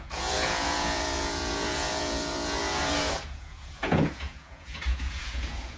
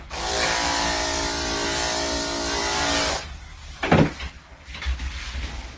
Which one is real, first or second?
second